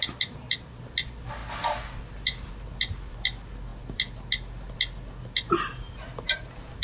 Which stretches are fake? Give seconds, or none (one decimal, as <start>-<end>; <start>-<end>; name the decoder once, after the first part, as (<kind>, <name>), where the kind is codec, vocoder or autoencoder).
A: none